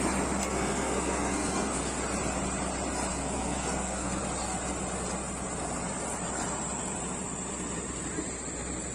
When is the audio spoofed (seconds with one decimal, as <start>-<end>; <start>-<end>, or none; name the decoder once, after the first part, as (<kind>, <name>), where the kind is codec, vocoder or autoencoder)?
0.4-2.0 (codec, SNAC); 3.1-4.2